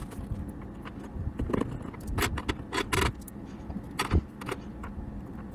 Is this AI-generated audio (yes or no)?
no